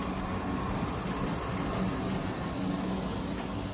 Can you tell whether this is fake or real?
real